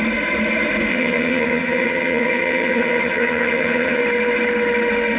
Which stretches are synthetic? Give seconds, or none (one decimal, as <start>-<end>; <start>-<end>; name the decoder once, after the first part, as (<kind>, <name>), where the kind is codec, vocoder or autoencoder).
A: 0.9-4.0 (vocoder, HiFi-GAN)